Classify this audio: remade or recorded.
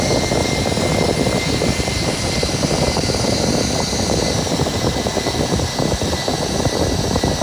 recorded